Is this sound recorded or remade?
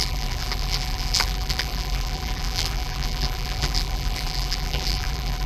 remade